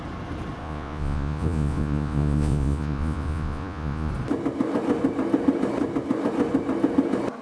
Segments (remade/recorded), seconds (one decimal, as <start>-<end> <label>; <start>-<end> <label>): 0.0-0.6 recorded; 0.6-4.1 remade; 4.1-7.4 recorded